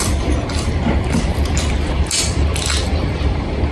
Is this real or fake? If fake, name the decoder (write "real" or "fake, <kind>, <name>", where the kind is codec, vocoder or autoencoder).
fake, vocoder, BigVGAN v2